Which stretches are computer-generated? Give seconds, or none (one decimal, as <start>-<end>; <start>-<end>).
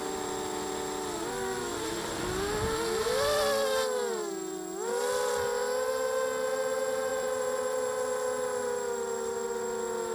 1.7-2.3; 7.1-7.8